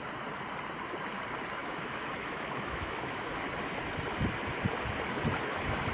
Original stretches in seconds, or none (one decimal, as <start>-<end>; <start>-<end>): 0.0-1.6; 3.4-5.9